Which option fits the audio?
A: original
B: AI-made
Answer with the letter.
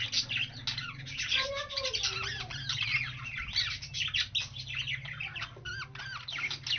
A